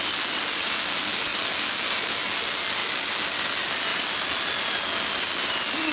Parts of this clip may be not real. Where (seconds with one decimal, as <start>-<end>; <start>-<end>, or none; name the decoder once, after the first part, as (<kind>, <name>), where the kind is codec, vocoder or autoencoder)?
none